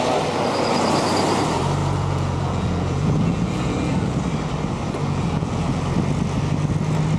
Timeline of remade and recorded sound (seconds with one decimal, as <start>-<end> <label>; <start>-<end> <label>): 0.0-1.8 recorded; 1.8-4.2 remade; 4.2-5.0 recorded; 5.0-5.8 remade; 5.8-7.2 recorded